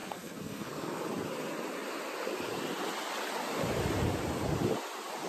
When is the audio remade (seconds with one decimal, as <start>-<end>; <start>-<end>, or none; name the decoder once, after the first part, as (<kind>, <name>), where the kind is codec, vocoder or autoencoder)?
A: 0.0-1.0 (codec, SNAC)